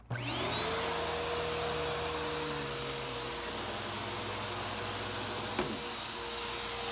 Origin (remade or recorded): recorded